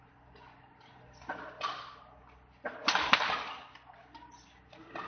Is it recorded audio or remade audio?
recorded